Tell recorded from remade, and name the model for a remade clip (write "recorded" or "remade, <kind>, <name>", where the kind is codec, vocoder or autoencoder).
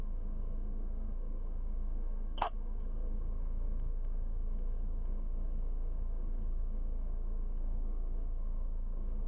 remade, codec, SNAC